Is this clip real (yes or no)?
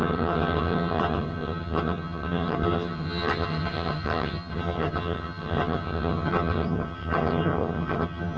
no